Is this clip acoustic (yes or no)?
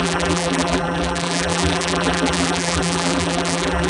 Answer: no